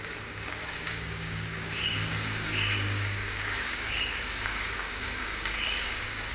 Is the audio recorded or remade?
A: remade